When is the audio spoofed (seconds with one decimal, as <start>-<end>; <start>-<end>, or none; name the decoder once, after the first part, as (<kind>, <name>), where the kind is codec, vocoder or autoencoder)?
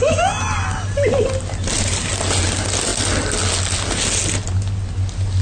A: none